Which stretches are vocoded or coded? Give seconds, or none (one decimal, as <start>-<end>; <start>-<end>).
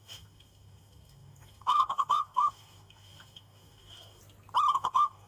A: 0.0-4.2; 4.7-5.3